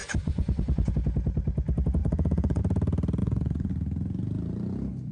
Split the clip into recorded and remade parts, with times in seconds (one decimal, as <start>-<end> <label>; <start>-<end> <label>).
0.0-0.9 remade; 0.9-2.0 recorded; 2.0-2.6 remade; 2.6-3.2 recorded; 3.2-3.7 remade; 3.7-5.1 recorded